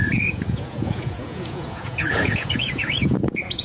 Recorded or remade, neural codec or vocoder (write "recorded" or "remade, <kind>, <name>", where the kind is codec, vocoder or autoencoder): remade, vocoder, Vocos